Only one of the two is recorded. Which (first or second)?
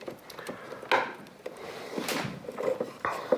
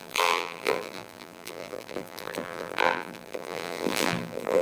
first